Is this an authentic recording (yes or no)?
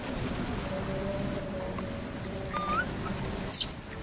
yes